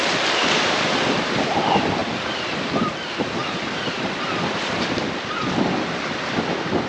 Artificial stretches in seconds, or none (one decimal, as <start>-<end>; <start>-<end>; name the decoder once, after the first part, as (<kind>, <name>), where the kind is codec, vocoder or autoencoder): 2.0-2.9 (vocoder, BigVGAN v2); 3.4-6.9

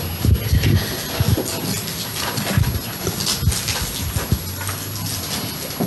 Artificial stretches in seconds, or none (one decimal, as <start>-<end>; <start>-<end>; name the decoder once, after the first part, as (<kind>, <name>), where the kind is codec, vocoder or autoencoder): none

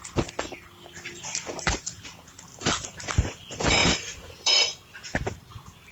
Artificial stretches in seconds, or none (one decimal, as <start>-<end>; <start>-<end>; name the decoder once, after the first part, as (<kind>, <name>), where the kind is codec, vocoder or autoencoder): 2.5-3.1 (vocoder, BigVGAN v2); 3.8-4.5

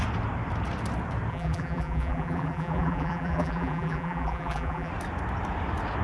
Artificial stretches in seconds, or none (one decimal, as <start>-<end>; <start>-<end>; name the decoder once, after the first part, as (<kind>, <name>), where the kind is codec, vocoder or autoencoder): 1.3-4.9 (vocoder, BigVGAN v2)

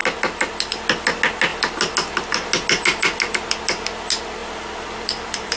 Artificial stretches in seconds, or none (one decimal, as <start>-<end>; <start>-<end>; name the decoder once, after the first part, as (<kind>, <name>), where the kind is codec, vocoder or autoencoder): 4.4-5.6 (vocoder, BigVGAN v2)

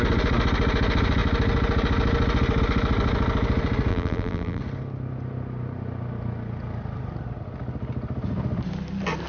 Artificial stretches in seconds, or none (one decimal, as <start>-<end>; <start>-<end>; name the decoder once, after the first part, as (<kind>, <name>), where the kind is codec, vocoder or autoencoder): 3.9-4.6 (vocoder, BigVGAN v2)